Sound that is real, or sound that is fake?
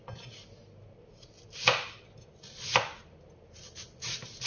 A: real